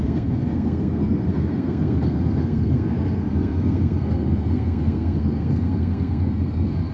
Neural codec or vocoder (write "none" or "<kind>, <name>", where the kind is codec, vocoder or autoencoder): codec, SNAC